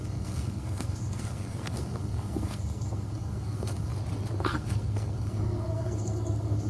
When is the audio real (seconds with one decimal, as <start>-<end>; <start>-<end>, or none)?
3.9-4.4